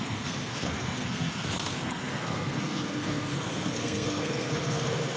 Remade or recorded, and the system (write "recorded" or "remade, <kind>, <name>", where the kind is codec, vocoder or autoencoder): remade, codec, SNAC